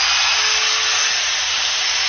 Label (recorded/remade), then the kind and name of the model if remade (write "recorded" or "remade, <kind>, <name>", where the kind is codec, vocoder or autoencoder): recorded